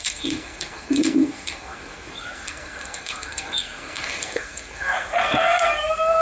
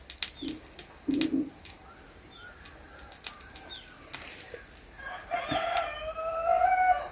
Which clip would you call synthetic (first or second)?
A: first